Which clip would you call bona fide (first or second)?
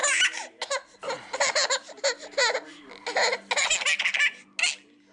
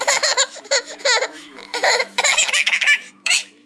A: first